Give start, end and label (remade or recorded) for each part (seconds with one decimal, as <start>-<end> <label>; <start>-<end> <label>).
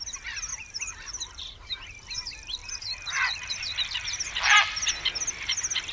0.0-0.5 recorded; 0.5-1.8 remade; 1.8-2.6 recorded; 2.6-4.3 remade; 4.3-5.9 recorded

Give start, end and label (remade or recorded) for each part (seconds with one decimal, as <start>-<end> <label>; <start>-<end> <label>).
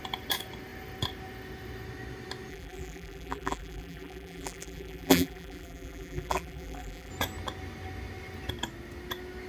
0.0-2.5 recorded; 2.5-7.1 remade; 7.1-9.5 recorded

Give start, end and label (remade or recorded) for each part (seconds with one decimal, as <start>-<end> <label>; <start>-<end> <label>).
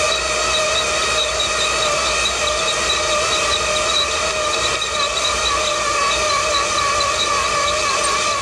0.0-8.4 recorded